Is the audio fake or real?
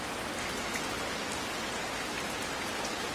real